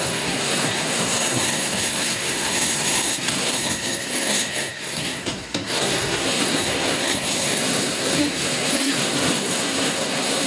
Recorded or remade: remade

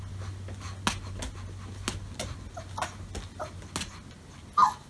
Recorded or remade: recorded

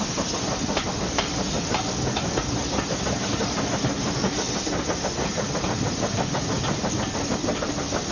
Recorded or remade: recorded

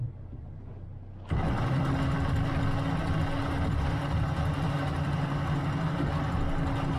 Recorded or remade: recorded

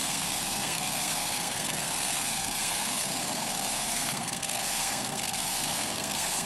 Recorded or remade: remade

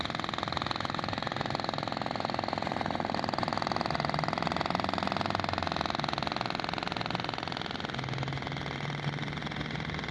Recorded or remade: recorded